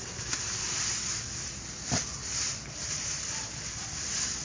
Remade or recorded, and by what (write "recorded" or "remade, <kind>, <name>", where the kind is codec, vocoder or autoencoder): recorded